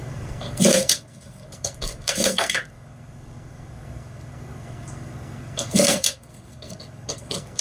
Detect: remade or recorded remade